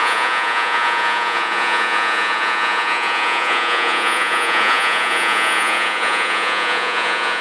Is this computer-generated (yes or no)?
yes